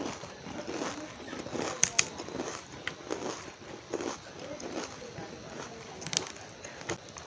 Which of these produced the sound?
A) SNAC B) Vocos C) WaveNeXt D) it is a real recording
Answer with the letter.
D